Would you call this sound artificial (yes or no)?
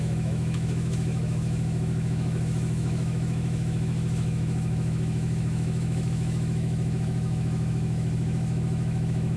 yes